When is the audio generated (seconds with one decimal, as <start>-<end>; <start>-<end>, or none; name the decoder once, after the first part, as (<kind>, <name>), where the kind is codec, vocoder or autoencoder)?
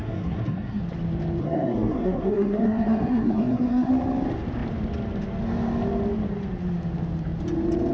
0.0-0.8 (codec, SNAC); 1.4-3.9